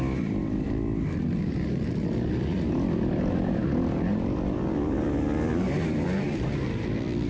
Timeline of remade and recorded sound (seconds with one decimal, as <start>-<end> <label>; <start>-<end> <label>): 0.0-7.3 remade